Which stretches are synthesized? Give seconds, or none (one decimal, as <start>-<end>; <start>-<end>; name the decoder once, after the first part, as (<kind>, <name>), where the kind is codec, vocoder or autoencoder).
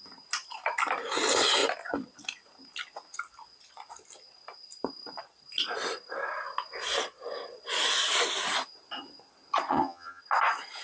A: 9.7-10.2 (vocoder, HiFi-GAN)